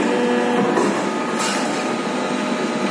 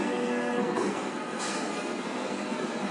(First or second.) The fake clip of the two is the second